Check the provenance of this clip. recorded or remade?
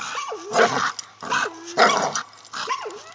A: recorded